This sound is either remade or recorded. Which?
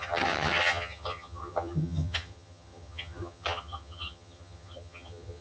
remade